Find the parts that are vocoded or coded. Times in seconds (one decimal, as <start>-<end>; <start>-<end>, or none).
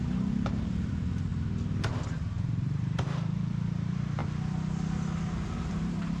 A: 0.0-1.3; 2.4-4.2; 5.6-6.2